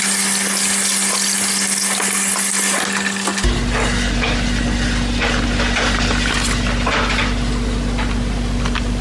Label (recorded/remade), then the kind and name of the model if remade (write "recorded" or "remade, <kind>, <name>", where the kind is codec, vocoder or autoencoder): recorded